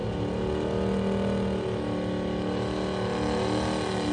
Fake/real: real